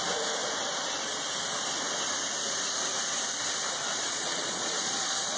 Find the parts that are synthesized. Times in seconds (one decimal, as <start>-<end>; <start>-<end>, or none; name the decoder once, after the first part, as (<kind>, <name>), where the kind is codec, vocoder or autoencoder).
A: 3.9-5.4 (vocoder, Vocos)